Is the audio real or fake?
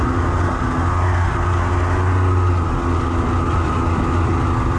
real